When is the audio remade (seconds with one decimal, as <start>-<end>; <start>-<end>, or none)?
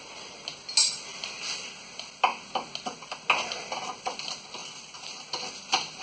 none